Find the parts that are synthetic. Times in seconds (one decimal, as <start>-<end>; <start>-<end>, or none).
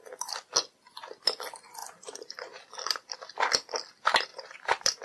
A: 1.8-3.1; 4.3-5.0